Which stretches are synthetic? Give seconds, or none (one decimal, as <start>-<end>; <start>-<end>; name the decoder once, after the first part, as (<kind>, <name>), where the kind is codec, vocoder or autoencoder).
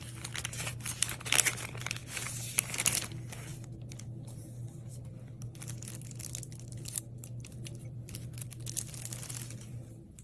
3.5-5.1 (vocoder, BigVGAN v2); 7.8-8.6